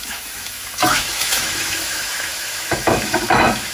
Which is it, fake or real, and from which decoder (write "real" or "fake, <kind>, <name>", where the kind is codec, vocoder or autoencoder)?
fake, autoencoder, DAC-VAE